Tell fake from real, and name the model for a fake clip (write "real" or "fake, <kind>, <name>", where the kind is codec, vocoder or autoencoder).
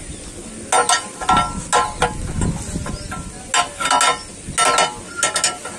real